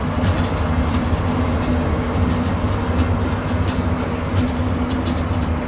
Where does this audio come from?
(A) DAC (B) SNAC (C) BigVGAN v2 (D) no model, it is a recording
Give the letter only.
D